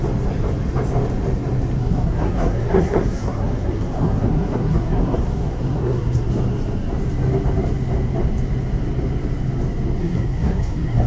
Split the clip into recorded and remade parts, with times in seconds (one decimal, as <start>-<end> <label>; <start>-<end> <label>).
0.0-1.8 recorded; 1.8-6.3 remade; 6.3-10.0 recorded; 10.0-11.1 remade